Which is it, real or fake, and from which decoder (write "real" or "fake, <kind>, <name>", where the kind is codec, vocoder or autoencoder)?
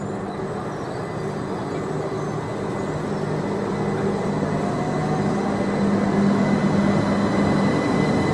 real